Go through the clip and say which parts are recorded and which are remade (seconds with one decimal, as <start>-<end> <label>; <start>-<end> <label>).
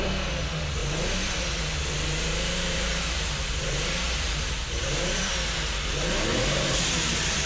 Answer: 0.0-0.8 recorded; 0.8-5.3 remade; 5.3-6.3 recorded; 6.3-7.5 remade